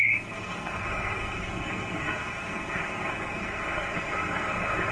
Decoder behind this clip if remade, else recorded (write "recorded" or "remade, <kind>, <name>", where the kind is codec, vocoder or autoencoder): remade, codec, SNAC